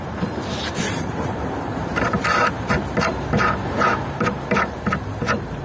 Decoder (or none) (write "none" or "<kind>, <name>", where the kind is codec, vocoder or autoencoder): vocoder, BigVGAN v2